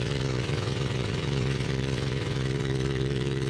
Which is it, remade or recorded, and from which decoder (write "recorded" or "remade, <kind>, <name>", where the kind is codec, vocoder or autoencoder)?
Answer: remade, vocoder, WaveNeXt